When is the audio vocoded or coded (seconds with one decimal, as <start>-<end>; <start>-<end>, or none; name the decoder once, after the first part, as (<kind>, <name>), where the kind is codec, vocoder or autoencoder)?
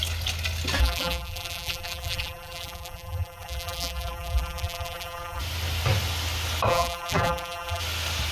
0.8-5.4 (vocoder, BigVGAN v2); 6.7-7.8